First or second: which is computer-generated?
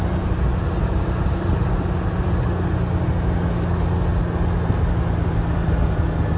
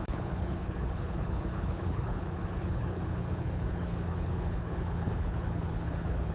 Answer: second